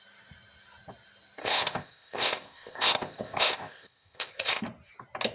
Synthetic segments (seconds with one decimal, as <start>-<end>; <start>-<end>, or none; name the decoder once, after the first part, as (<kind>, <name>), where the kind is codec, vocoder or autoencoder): 1.4-4.6 (codec, ZipCodec)